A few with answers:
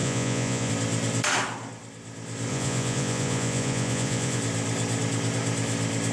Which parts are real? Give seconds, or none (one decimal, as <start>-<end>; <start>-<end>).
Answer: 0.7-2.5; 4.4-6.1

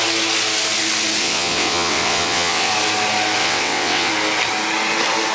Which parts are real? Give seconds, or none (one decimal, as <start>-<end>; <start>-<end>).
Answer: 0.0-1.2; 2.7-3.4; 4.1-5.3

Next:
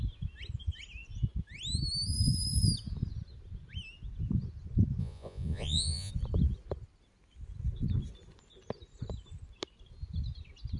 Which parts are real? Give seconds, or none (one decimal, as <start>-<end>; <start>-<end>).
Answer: 0.0-5.0; 6.1-10.8

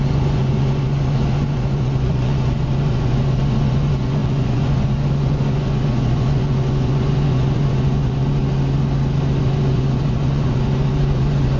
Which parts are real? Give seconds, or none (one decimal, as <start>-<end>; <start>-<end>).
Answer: 8.4-9.4